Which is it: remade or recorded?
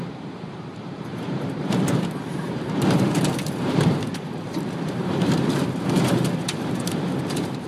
remade